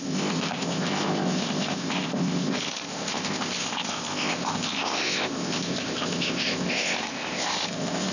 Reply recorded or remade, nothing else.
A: remade